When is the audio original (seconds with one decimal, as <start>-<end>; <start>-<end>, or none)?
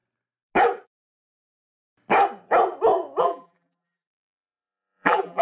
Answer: 0.0-3.2